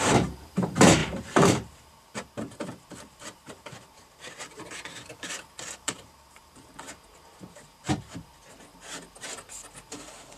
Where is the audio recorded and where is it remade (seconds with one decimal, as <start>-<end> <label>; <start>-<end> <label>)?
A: 0.0-8.7 remade; 8.7-9.9 recorded; 9.9-10.4 remade